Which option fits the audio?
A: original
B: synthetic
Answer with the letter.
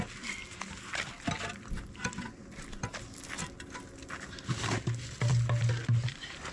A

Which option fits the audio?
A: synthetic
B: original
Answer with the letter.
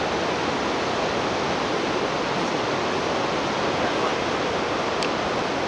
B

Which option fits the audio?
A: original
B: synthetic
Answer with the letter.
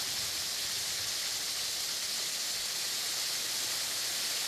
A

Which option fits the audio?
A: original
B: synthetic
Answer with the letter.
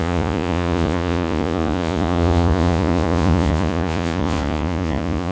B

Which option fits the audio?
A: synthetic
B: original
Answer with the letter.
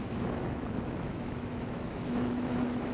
A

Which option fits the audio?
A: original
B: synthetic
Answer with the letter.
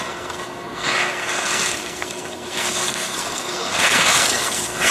B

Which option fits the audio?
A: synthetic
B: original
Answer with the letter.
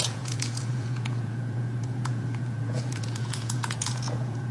A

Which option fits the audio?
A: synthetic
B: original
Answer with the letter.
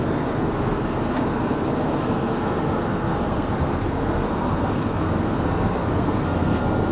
A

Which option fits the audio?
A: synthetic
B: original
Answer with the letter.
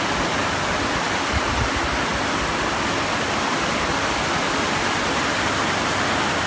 B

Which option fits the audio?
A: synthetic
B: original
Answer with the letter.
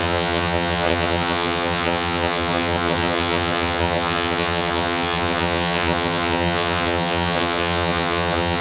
A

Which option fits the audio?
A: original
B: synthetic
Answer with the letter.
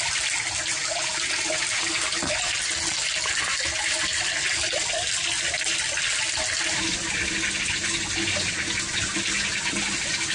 A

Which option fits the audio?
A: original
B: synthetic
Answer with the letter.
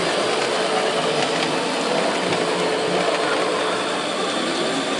A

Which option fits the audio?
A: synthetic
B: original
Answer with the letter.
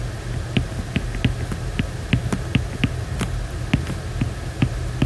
B